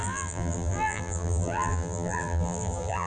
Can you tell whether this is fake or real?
fake